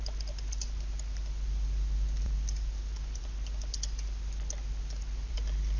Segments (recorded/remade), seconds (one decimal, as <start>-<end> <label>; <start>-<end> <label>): 0.0-5.8 recorded

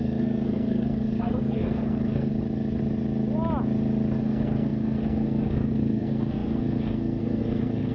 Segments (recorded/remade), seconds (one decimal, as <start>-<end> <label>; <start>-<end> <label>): 0.0-2.3 remade; 2.3-4.2 recorded; 4.2-7.9 remade

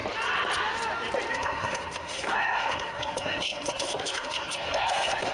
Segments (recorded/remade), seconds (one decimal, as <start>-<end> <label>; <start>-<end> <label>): 0.0-1.3 recorded; 1.3-5.3 remade

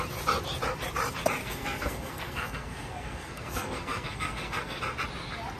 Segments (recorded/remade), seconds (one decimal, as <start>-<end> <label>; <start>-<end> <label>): 0.0-1.4 recorded; 1.4-4.8 remade; 4.8-5.6 recorded

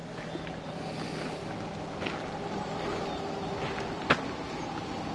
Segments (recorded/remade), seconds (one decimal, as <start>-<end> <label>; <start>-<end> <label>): 0.0-5.1 recorded

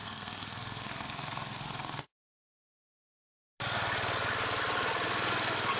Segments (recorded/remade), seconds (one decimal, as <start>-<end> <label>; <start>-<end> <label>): 0.0-2.9 remade; 2.9-5.8 recorded

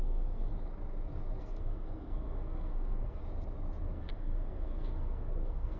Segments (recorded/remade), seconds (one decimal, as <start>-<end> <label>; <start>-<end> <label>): 0.0-0.5 remade; 0.5-1.4 recorded; 1.4-3.2 remade; 3.2-3.8 recorded; 3.8-5.8 remade

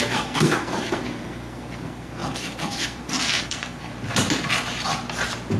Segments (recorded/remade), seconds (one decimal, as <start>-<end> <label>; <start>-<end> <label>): 0.0-3.9 remade; 3.9-5.6 recorded